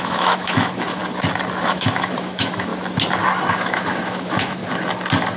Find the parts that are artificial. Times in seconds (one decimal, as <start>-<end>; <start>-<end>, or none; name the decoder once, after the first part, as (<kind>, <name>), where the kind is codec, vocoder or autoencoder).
0.0-1.0 (autoencoder, DAC-VAE); 1.6-2.7; 3.5-4.6